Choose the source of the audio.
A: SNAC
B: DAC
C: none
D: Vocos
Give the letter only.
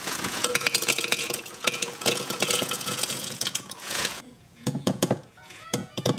D